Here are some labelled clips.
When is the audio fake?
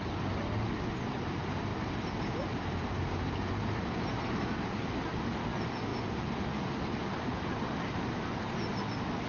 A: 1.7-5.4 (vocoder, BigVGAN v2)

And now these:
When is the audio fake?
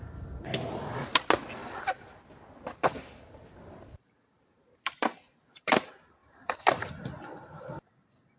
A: 1.6-2.3 (vocoder, BigVGAN v2); 2.8-5.8; 6.2-7.0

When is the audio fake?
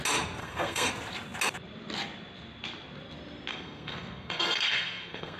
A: 0.4-0.9 (codec, SNAC); 3.5-5.4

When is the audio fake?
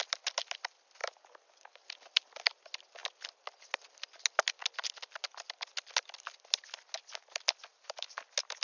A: 7.7-8.2 (vocoder, BigVGAN v2)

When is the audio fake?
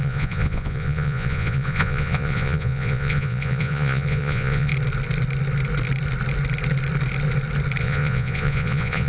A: 0.0-4.7 (vocoder, Vocos); 7.8-9.1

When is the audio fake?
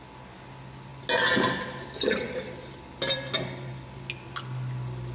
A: none